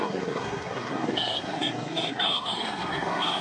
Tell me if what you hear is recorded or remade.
remade